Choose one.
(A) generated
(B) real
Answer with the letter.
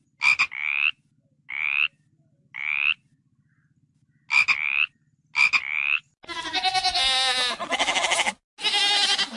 B